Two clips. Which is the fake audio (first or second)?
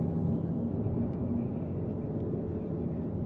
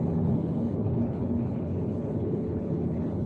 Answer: second